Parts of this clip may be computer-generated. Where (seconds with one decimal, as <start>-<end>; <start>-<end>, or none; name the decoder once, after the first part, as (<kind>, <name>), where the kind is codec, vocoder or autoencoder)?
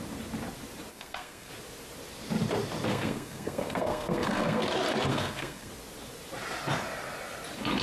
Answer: 0.9-1.5 (codec, SNAC); 2.9-4.6; 5.1-5.7